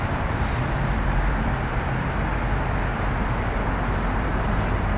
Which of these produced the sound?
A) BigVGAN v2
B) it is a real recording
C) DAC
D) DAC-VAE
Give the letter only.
A